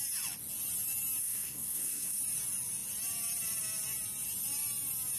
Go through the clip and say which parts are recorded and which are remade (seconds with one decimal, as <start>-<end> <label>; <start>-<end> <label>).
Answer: 0.0-1.2 recorded; 1.2-2.2 remade; 2.2-5.2 recorded